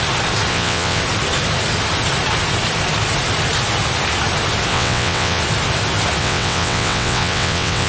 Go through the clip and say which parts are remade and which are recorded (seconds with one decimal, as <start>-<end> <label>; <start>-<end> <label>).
0.0-0.5 recorded; 0.5-1.0 remade; 1.0-4.7 recorded; 4.7-5.4 remade; 5.4-6.2 recorded; 6.2-7.9 remade